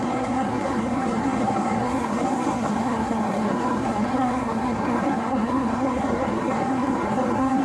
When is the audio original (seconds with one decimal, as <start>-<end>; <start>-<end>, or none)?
none